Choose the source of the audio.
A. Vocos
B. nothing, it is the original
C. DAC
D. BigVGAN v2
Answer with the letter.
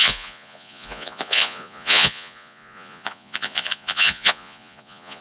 A